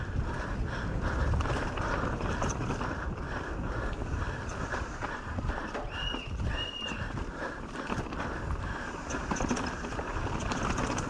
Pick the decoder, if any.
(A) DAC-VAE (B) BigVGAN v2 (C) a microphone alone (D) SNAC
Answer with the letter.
B